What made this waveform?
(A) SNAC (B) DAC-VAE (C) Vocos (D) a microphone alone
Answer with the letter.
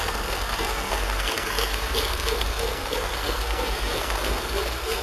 A